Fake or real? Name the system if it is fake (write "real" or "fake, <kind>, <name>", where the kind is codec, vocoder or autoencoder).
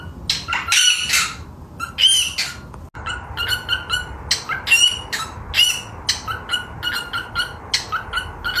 real